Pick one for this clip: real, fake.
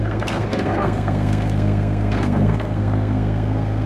fake